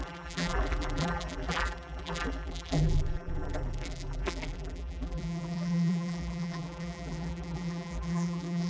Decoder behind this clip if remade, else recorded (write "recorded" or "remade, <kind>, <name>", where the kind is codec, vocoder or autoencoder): remade, vocoder, BigVGAN v2